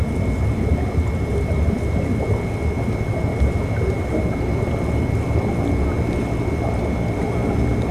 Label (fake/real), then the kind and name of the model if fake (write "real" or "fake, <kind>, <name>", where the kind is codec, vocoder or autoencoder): real